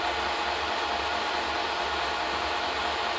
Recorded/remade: recorded